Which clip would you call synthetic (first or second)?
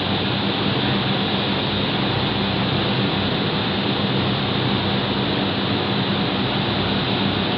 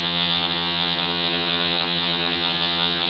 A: second